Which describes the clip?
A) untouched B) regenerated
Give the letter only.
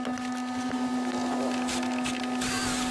A